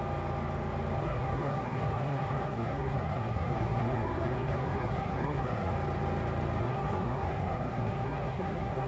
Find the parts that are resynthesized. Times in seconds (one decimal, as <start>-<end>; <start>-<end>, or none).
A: 1.0-5.7; 6.6-8.9